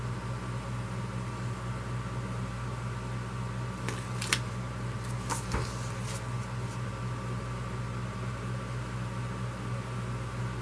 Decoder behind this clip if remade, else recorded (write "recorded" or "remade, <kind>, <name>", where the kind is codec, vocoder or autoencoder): recorded